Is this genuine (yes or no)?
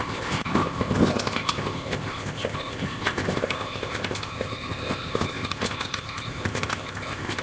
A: no